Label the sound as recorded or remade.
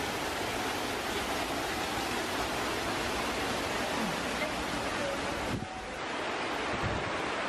recorded